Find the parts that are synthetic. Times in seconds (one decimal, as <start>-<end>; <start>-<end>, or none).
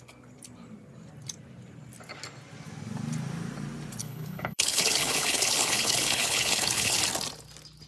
4.0-7.0